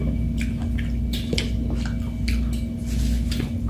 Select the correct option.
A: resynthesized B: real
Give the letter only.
B